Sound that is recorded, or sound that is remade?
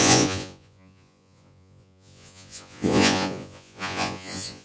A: remade